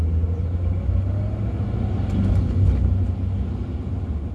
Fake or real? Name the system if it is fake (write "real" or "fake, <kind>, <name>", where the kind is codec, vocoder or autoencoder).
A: real